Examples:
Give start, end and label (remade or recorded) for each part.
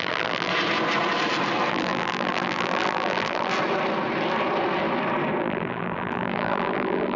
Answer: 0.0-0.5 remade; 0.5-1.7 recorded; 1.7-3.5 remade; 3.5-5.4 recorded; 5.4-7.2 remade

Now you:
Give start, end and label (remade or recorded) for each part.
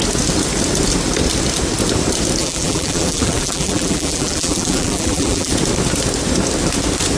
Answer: 0.0-2.4 recorded; 2.4-5.5 remade; 5.5-7.2 recorded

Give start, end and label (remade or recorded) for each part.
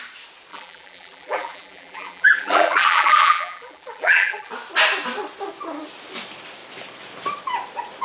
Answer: 0.0-0.5 recorded; 0.5-4.5 remade; 4.5-8.0 recorded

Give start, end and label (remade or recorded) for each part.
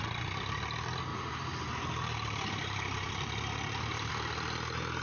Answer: 0.0-1.1 recorded; 1.1-4.1 remade; 4.1-5.0 recorded